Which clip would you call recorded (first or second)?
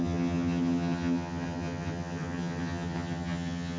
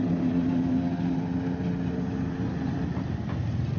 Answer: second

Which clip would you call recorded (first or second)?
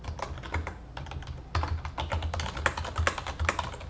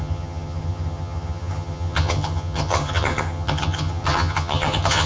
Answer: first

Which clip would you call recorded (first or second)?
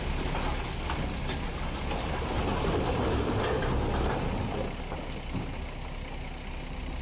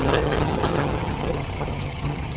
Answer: first